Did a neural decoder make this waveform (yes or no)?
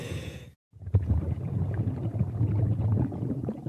yes